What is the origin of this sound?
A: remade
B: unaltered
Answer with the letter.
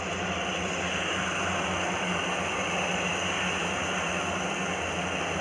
B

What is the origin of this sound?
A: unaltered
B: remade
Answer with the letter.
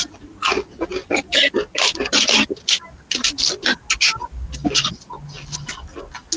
A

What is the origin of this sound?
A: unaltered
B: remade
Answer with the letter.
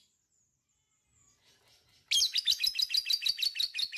A